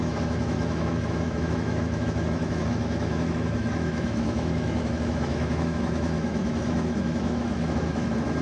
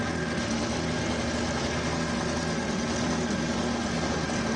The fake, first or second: first